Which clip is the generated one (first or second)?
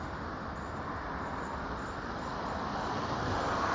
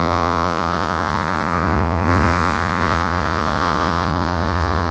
second